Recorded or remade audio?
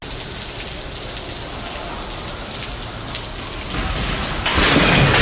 recorded